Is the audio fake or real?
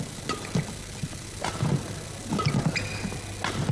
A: real